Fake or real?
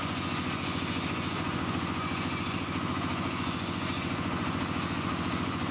fake